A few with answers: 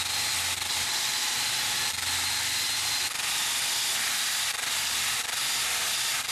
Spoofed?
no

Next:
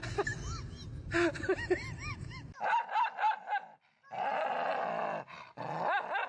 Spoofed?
no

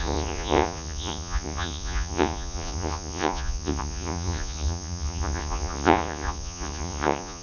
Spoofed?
yes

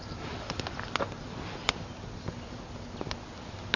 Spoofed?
no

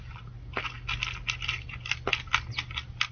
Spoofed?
no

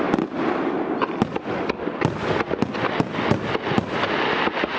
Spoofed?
no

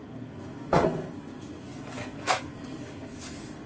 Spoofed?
yes